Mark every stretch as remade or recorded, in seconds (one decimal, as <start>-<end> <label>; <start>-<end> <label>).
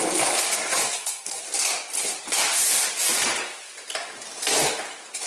0.0-0.7 recorded; 0.7-1.4 remade; 1.4-5.3 recorded